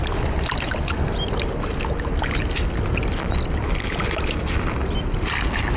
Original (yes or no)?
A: yes